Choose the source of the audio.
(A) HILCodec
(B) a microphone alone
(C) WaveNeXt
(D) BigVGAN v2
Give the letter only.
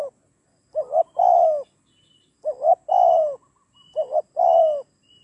B